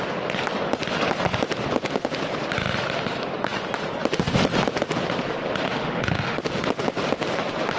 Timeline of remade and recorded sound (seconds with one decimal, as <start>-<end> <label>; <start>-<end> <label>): 0.0-5.8 recorded; 5.8-6.4 remade; 6.4-7.8 recorded